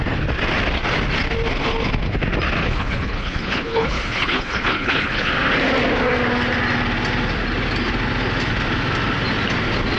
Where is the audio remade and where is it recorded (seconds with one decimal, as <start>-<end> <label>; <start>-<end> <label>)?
0.0-2.6 recorded; 2.6-5.3 remade; 5.3-10.0 recorded